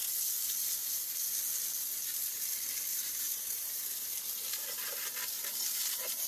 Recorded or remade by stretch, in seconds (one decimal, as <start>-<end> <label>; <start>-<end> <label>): 0.0-2.9 recorded; 2.9-4.0 remade; 4.0-6.3 recorded

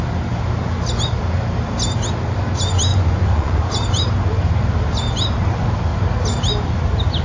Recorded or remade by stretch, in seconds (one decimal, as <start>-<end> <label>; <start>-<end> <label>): 0.0-2.9 recorded; 2.9-3.6 remade; 3.6-7.2 recorded

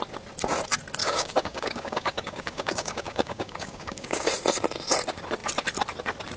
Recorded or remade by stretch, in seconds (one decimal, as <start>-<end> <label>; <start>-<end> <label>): 0.0-1.0 recorded; 1.0-4.3 remade; 4.3-6.4 recorded

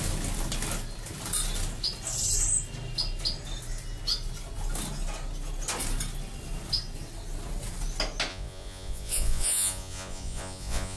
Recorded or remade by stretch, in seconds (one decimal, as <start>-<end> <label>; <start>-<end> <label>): 0.0-8.3 recorded; 8.3-11.0 remade

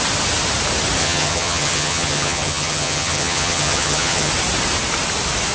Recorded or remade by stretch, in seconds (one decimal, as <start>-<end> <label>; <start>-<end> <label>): 0.0-1.0 recorded; 1.0-4.3 remade; 4.3-5.5 recorded